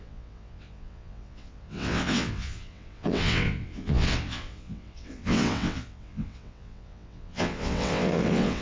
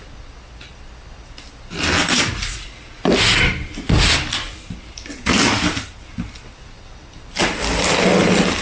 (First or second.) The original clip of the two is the second